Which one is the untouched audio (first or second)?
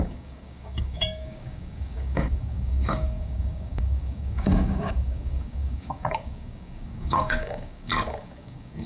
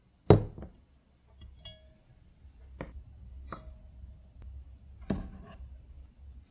second